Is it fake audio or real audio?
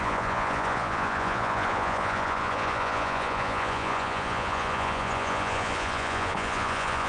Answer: fake